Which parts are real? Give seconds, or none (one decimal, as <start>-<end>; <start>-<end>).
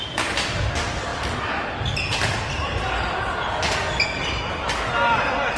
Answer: 0.0-5.6